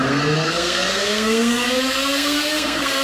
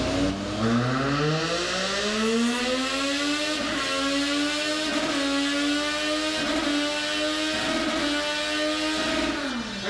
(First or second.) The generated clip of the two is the first